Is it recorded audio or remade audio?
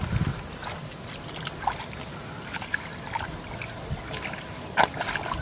recorded